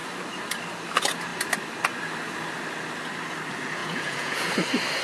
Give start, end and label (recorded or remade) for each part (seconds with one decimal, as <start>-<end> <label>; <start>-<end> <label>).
0.0-3.8 recorded; 3.8-4.5 remade; 4.5-5.0 recorded

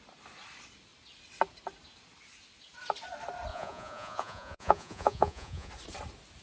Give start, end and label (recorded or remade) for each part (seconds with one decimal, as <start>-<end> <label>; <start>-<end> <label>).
0.0-3.5 recorded; 3.5-5.7 remade; 5.7-6.4 recorded

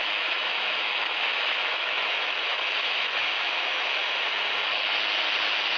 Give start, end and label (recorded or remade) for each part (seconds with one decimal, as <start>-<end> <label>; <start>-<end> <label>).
0.0-4.0 remade; 4.0-5.8 recorded

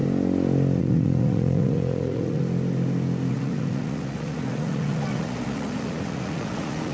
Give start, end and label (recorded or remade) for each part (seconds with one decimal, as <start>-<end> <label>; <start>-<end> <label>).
0.0-0.8 recorded; 0.8-2.4 remade; 2.4-3.3 recorded; 3.3-6.9 remade

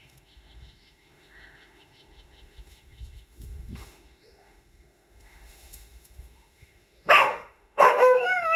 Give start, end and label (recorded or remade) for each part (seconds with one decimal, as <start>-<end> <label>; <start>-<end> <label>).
0.0-8.6 remade

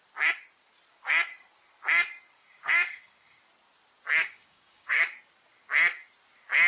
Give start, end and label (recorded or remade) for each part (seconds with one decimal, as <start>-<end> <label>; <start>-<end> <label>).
0.0-2.4 recorded; 2.4-3.4 remade; 3.4-4.2 recorded; 4.2-5.0 remade; 5.0-6.7 recorded

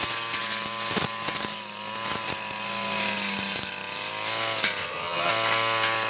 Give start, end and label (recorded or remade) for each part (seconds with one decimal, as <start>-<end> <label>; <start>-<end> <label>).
0.0-4.8 recorded; 4.8-5.3 remade; 5.3-6.1 recorded

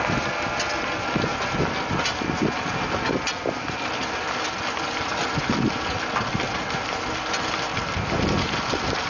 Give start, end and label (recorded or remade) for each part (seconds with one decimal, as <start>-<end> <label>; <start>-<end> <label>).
0.0-9.1 recorded